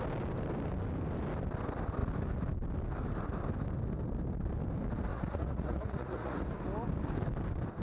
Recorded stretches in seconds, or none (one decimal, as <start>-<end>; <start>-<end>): 0.0-5.1; 6.5-7.8